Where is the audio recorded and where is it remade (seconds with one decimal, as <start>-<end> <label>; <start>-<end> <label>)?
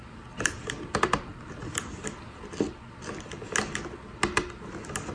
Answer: 0.0-2.5 remade; 2.5-5.1 recorded